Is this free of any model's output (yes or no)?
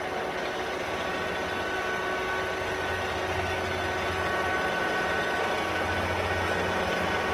yes